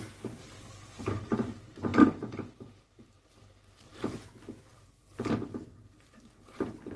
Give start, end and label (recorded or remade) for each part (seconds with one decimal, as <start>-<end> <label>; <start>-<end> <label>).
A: 0.0-0.4 remade; 0.4-1.1 recorded; 1.1-7.0 remade